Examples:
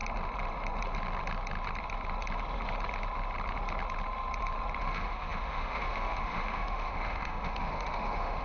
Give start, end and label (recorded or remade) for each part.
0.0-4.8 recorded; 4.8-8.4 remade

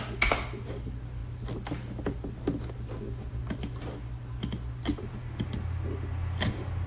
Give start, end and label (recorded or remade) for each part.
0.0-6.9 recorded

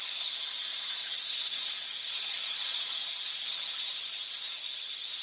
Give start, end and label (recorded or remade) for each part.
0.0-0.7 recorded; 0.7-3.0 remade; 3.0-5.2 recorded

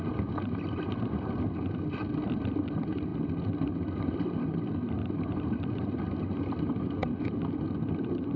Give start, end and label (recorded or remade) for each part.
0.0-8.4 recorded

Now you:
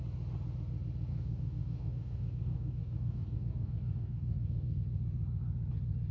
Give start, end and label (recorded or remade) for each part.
0.0-1.1 recorded; 1.1-4.8 remade; 4.8-6.1 recorded